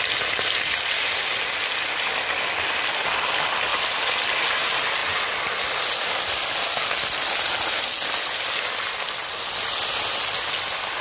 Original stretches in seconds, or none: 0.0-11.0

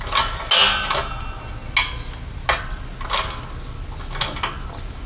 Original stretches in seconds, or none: 0.0-5.1

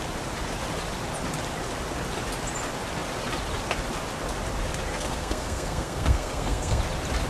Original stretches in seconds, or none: 0.0-4.9; 6.8-7.3

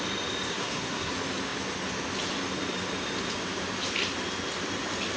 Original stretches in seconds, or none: 0.0-0.5; 1.1-5.2

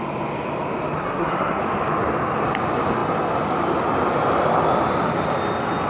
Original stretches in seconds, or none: 0.0-1.0; 1.6-5.9